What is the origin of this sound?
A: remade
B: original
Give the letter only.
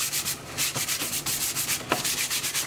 B